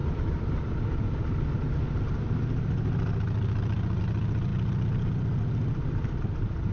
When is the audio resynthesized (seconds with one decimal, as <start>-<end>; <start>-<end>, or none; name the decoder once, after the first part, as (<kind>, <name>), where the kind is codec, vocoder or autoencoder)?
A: none